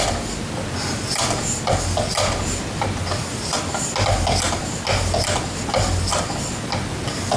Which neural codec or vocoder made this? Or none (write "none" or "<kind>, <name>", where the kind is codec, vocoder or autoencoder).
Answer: none